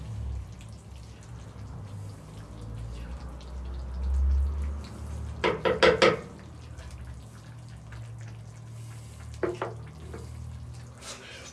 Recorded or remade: recorded